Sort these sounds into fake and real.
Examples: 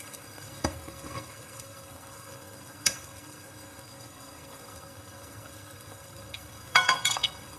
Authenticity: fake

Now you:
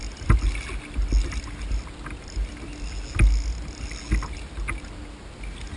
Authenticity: real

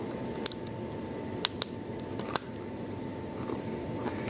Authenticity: real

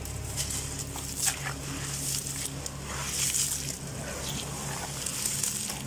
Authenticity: real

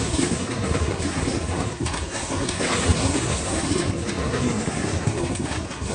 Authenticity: fake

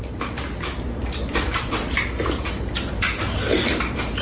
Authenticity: fake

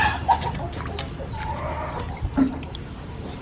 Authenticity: real